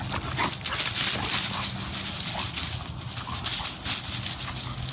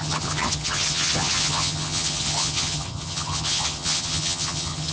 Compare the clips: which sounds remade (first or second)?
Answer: second